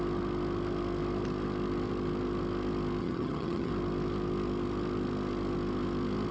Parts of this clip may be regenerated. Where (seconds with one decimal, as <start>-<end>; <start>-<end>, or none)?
3.0-3.7